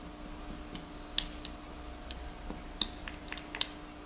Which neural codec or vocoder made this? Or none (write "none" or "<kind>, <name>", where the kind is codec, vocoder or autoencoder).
none